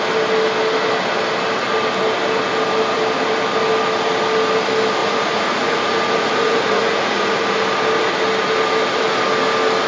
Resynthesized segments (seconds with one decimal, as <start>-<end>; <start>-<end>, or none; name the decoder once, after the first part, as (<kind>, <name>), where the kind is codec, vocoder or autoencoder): 5.0-7.4 (vocoder, Vocos)